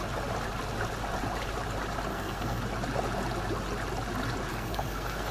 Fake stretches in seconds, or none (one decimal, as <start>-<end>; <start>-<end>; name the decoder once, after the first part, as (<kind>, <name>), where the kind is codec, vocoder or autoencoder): 2.1-2.6 (codec, SNAC); 4.5-5.3